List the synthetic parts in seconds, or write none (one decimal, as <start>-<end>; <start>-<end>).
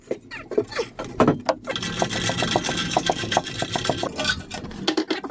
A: 2.8-3.5